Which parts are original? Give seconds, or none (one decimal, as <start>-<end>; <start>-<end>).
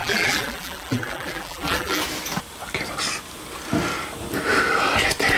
2.0-5.4